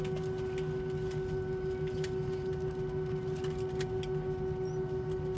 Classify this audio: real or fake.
real